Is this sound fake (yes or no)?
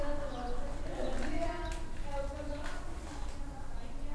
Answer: no